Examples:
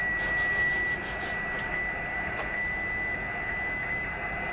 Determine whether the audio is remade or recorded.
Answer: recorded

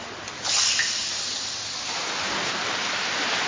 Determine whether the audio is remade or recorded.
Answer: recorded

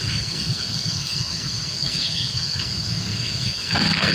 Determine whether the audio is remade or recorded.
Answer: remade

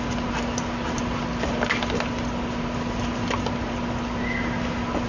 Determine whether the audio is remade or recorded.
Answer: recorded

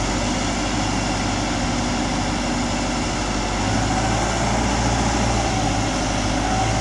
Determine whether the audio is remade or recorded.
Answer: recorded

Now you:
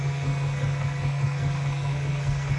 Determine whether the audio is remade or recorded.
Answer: remade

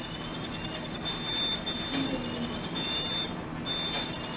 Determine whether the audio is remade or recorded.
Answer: recorded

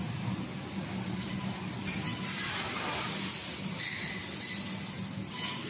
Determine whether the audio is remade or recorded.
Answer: recorded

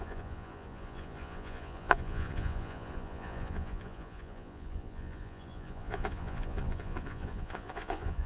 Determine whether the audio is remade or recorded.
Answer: remade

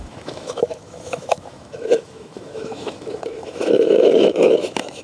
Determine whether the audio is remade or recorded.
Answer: remade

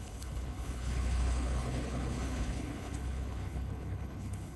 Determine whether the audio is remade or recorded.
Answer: remade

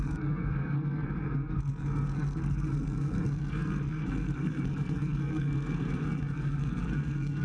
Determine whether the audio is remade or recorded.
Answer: remade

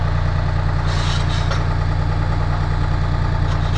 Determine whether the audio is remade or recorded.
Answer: recorded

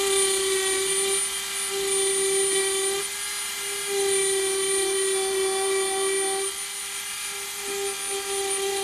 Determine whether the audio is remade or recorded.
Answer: recorded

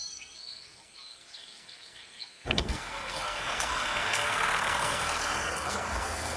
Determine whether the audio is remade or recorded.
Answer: remade